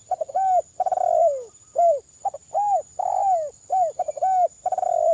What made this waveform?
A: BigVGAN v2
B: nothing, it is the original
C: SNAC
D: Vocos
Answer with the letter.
B